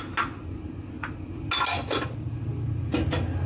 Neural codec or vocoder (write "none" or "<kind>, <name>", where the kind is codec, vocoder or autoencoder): none